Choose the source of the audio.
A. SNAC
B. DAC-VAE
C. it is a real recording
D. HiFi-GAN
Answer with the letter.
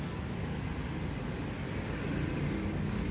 C